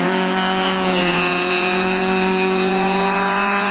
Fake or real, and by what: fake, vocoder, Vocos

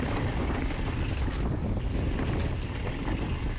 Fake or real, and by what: real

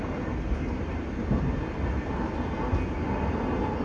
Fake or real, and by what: real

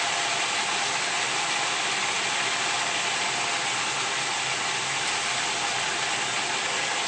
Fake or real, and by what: real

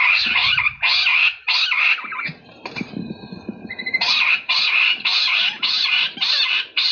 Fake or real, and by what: fake, vocoder, BigVGAN v2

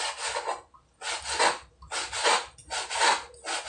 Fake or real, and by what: real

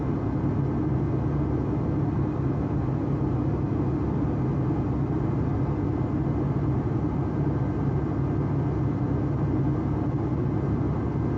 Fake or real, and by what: real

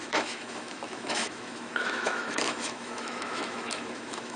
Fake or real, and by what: fake, autoencoder, DAC-VAE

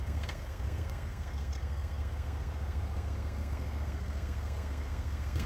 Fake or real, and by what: fake, codec, SNAC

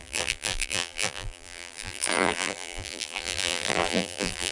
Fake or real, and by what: fake, vocoder, BigVGAN v2